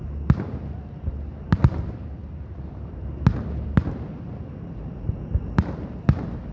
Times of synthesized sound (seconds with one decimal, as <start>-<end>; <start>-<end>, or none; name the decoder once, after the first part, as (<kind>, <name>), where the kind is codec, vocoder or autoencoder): 0.0-6.5 (vocoder, BigVGAN v2)